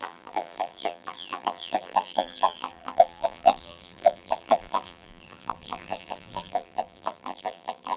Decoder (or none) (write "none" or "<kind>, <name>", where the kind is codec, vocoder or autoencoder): vocoder, BigVGAN v2